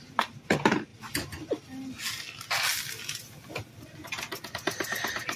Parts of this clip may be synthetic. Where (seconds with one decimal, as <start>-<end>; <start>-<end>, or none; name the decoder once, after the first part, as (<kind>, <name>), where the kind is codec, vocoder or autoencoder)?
none